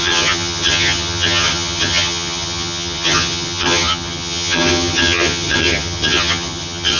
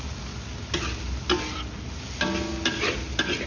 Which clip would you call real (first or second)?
second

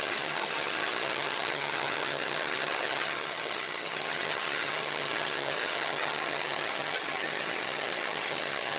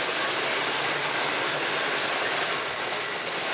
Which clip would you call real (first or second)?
second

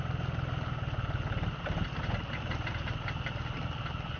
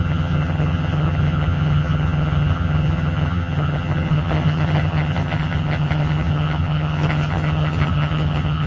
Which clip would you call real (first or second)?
first